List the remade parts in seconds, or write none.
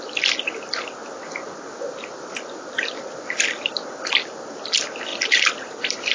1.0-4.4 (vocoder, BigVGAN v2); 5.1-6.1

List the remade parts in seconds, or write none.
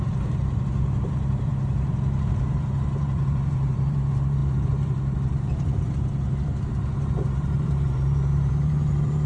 0.0-1.5 (vocoder, BigVGAN v2); 2.3-9.3